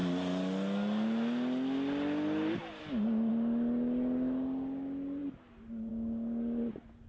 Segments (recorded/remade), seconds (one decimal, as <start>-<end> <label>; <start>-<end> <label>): 0.0-7.1 recorded